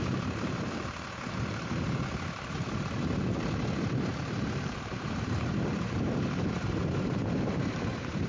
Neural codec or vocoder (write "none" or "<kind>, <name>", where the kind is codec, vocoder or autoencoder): vocoder, BigVGAN v2